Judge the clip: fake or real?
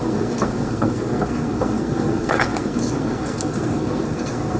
fake